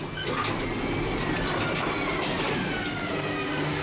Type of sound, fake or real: real